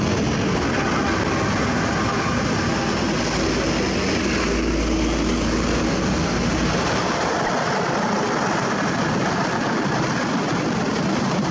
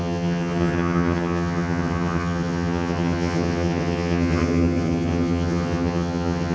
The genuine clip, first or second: first